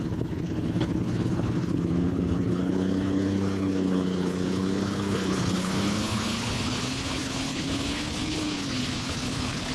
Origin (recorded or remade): remade